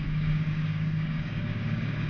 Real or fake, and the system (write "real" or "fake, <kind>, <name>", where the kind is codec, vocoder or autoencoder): fake, codec, DAC